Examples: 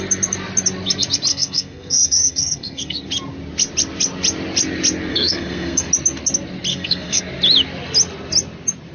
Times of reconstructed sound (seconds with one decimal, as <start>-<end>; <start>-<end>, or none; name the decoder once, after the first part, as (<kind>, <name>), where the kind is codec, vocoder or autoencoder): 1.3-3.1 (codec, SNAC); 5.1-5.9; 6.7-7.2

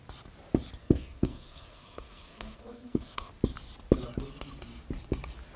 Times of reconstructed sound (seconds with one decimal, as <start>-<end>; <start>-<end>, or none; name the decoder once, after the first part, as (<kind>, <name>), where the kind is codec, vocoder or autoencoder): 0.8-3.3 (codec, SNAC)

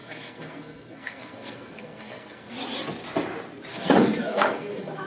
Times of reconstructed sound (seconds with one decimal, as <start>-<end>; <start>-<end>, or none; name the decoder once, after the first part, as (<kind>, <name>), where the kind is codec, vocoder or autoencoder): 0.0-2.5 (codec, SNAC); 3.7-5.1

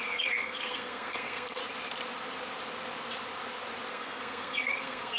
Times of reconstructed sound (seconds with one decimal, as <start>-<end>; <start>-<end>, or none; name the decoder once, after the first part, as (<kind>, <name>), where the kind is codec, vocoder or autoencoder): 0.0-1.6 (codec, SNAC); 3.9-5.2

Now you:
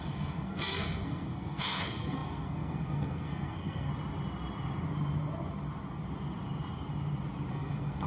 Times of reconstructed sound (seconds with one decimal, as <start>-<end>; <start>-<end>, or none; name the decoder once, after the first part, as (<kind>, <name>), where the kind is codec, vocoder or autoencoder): 0.0-3.9 (codec, SNAC); 7.5-8.1

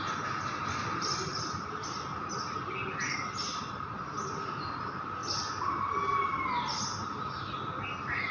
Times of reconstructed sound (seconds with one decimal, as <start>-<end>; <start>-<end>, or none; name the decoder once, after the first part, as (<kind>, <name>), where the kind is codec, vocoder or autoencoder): none

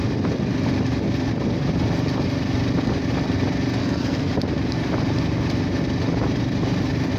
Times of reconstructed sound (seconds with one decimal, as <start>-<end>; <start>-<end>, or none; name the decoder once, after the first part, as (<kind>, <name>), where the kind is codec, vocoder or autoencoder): 3.8-4.3 (codec, SNAC)